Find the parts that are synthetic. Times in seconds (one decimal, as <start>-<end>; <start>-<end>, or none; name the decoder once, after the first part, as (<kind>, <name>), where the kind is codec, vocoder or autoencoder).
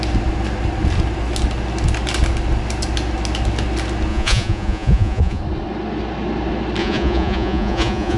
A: 4.1-5.4 (vocoder, Vocos); 6.8-8.2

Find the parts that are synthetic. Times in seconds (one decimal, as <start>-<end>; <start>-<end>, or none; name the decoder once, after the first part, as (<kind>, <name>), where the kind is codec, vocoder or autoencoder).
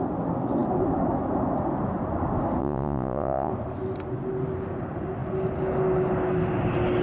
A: 2.6-3.5 (vocoder, Vocos)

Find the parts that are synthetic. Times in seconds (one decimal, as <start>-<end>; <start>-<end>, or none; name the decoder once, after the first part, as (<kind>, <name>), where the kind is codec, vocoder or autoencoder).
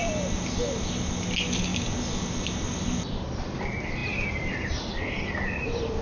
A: none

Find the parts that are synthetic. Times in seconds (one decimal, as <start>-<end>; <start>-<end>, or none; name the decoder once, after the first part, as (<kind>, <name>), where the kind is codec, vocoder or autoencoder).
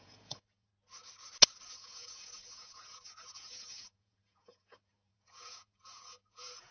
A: 0.0-0.7 (vocoder, Vocos); 1.7-6.7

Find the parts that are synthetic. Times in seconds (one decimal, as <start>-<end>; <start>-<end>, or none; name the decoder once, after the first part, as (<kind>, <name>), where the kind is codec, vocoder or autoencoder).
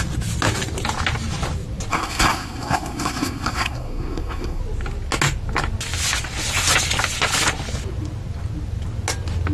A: 1.9-4.6 (codec, SNAC)